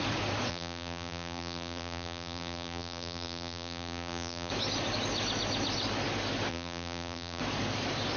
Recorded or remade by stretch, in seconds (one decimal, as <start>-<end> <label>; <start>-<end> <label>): 0.0-0.5 recorded; 0.5-4.5 remade; 4.5-6.5 recorded; 6.5-7.4 remade; 7.4-8.2 recorded